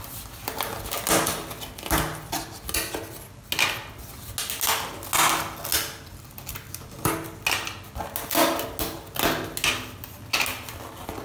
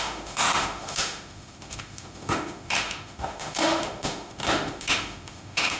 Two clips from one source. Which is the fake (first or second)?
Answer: second